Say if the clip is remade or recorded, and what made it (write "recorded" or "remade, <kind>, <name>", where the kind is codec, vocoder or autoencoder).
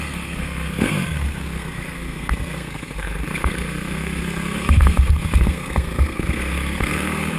remade, codec, SNAC